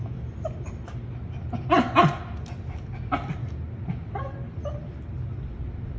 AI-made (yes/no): no